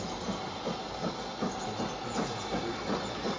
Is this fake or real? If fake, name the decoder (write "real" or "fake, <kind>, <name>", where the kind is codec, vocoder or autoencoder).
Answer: real